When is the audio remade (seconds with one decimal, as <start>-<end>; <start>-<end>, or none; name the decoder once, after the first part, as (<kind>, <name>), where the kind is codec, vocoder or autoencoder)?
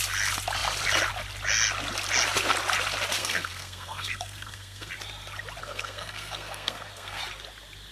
3.2-4.9 (codec, SNAC); 5.6-7.2